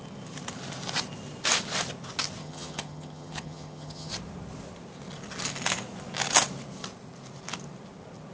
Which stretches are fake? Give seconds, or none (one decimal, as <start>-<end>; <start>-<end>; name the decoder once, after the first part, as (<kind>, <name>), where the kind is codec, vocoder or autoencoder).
2.4-4.1 (vocoder, HiFi-GAN)